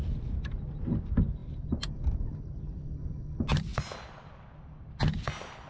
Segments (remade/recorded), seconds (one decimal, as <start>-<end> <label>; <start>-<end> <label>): 0.0-5.7 recorded